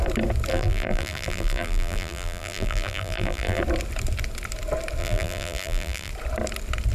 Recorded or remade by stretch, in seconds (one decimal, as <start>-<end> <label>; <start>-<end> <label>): 0.0-0.5 recorded; 0.5-3.6 remade; 3.6-5.0 recorded; 5.0-6.1 remade; 6.1-6.9 recorded

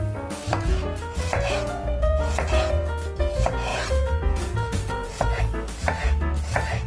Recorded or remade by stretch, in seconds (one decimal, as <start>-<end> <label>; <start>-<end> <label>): 0.0-0.5 recorded; 0.5-2.8 remade; 2.8-3.7 recorded; 3.7-5.4 remade; 5.4-6.9 recorded